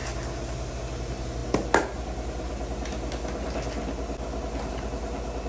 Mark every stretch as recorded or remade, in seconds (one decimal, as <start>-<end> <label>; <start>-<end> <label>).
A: 0.0-5.5 recorded